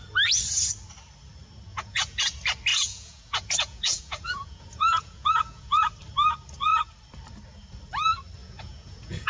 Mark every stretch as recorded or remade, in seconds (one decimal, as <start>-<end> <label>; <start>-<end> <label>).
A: 0.0-1.7 recorded; 1.7-2.3 remade; 2.3-2.7 recorded; 2.7-5.9 remade; 5.9-8.4 recorded; 8.4-9.3 remade

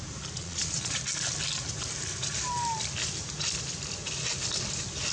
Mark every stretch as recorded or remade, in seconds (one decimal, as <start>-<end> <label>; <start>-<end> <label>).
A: 0.0-0.4 recorded; 0.4-1.0 remade; 1.0-5.1 recorded

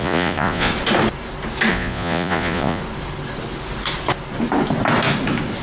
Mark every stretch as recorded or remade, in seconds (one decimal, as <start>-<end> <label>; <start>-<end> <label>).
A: 0.0-0.7 remade; 0.7-1.7 recorded; 1.7-2.8 remade; 2.8-5.6 recorded